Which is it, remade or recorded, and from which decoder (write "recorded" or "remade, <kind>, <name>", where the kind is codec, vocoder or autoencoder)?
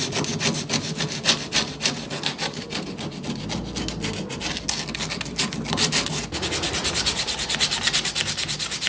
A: recorded